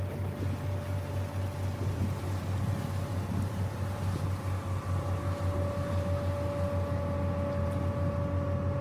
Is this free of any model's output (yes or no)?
yes